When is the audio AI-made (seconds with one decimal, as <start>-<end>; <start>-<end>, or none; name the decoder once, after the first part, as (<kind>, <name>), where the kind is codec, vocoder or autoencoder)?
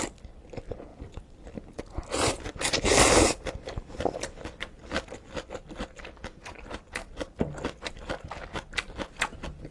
0.9-5.3 (vocoder, BigVGAN v2); 7.0-8.0